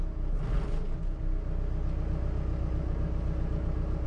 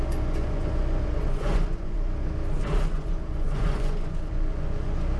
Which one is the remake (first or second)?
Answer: second